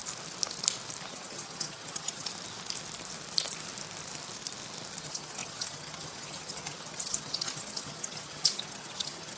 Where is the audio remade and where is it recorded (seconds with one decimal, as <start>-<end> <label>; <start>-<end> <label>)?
0.0-1.1 recorded; 1.1-2.3 remade; 2.3-5.0 recorded; 5.0-9.4 remade